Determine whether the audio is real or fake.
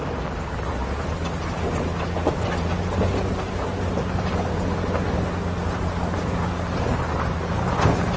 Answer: real